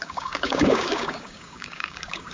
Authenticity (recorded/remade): remade